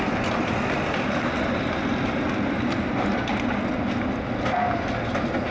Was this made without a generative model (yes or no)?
yes